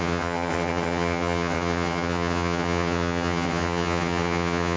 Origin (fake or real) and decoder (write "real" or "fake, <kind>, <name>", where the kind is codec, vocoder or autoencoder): fake, vocoder, HiFi-GAN